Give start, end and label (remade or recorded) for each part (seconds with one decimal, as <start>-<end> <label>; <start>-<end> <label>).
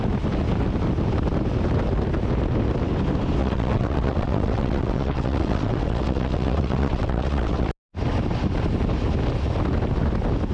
0.0-3.4 recorded; 3.4-7.7 remade; 7.7-10.5 recorded